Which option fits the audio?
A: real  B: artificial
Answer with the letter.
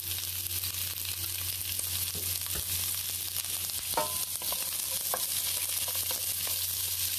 A